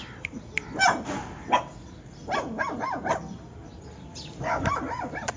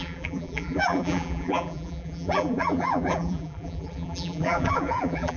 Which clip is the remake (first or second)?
second